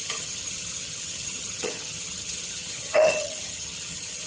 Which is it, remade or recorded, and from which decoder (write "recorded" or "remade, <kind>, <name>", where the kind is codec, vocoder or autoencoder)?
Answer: remade, vocoder, HiFi-GAN